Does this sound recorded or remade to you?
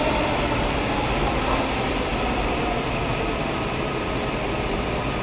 recorded